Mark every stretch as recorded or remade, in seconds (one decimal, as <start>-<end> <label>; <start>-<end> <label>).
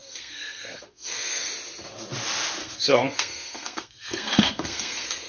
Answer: 0.0-1.5 remade; 1.5-2.6 recorded; 2.6-5.3 remade